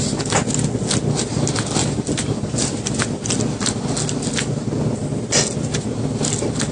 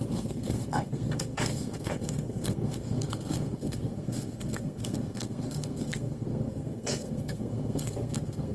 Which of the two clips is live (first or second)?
first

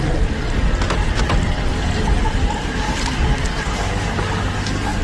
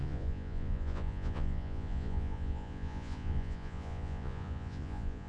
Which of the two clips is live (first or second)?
first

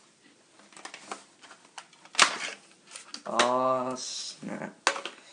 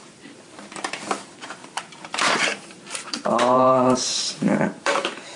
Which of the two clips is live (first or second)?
first